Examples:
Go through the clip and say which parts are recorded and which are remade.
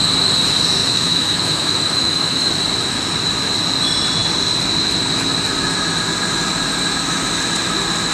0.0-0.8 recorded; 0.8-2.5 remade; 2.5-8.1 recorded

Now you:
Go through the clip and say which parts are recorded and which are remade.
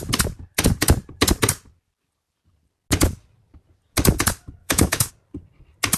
0.0-4.6 recorded; 4.6-5.1 remade; 5.1-6.0 recorded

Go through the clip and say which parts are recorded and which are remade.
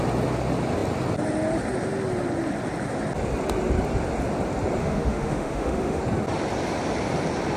0.0-4.8 recorded; 4.8-6.0 remade; 6.0-7.6 recorded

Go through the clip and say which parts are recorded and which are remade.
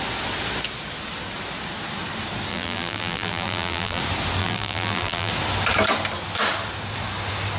0.0-2.5 recorded; 2.5-4.0 remade; 4.0-4.4 recorded; 4.4-5.3 remade; 5.3-7.6 recorded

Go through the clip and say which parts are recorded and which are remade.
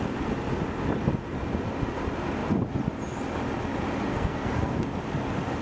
0.0-4.1 recorded; 4.1-4.8 remade; 4.8-5.6 recorded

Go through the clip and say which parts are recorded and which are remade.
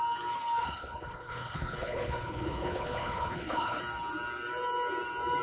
0.0-0.6 recorded; 0.6-3.8 remade; 3.8-5.4 recorded